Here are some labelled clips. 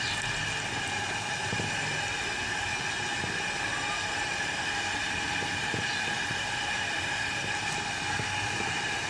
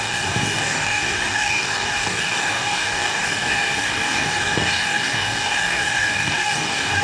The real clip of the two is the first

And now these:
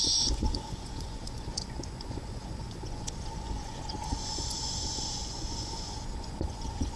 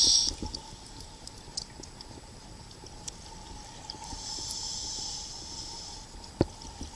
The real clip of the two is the second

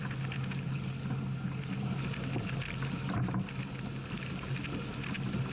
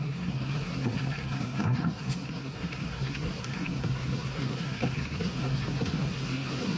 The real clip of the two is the first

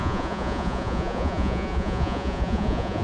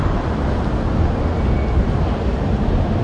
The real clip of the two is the second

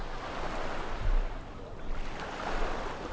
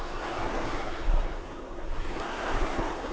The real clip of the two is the first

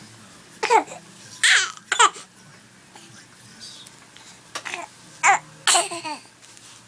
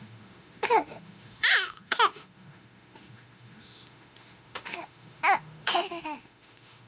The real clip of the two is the first